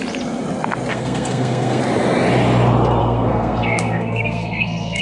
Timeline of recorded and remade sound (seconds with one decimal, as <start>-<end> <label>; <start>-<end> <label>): 0.0-0.9 recorded; 0.9-1.8 remade; 1.8-3.0 recorded; 3.0-5.0 remade